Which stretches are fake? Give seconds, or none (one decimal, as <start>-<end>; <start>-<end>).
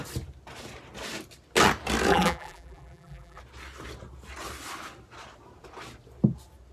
2.1-3.4